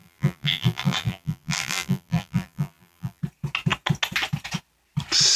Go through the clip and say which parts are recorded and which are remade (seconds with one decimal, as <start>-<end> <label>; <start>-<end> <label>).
0.0-3.2 remade; 3.2-5.4 recorded